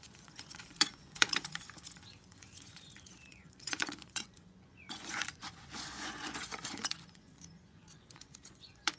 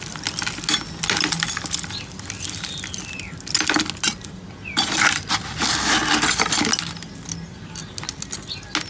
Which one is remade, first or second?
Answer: first